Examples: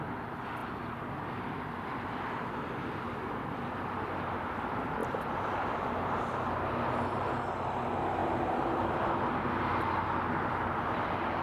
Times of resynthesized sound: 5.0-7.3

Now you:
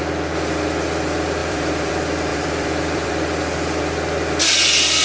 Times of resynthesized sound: 1.4-1.9; 2.3-3.1

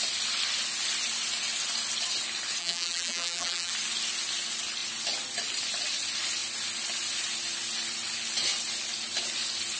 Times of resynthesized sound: 2.6-3.7

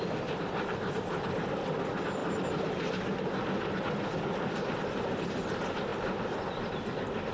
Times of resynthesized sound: none